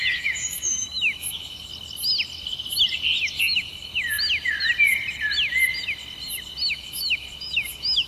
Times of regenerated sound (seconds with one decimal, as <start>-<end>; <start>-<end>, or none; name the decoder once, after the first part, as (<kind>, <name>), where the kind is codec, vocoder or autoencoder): 0.0-1.7 (autoencoder, DAC-VAE); 3.4-3.9; 6.7-8.1